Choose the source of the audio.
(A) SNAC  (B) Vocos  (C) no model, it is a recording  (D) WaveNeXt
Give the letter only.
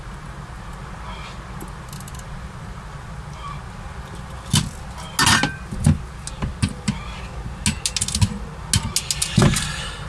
C